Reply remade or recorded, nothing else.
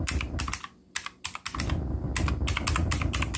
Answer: recorded